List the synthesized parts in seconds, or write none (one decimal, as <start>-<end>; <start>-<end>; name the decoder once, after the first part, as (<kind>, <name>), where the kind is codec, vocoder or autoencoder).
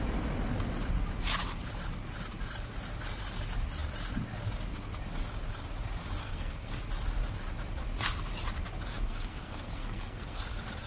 6.2-6.8 (codec, SNAC); 8.9-10.4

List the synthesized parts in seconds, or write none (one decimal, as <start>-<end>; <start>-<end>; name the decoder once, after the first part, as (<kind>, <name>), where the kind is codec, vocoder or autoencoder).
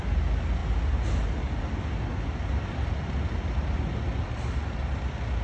none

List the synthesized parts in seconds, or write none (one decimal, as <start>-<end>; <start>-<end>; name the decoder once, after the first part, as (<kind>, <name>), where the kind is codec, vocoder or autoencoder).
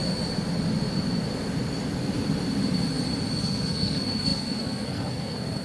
3.4-5.6 (codec, SNAC)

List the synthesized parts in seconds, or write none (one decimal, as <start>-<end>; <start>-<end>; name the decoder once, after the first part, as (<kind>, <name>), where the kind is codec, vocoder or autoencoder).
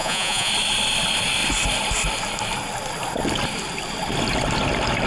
0.0-0.5 (vocoder, Vocos)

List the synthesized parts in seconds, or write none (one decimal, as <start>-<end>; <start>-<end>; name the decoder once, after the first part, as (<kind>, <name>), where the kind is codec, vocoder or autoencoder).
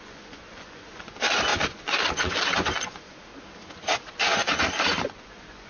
0.0-3.3 (vocoder, Vocos); 4.1-5.7